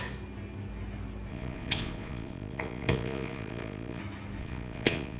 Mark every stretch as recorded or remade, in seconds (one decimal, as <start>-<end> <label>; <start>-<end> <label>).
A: 0.0-1.3 recorded; 1.3-4.0 remade; 4.0-4.4 recorded; 4.4-5.2 remade